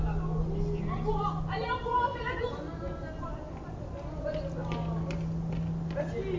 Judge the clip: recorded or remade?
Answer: recorded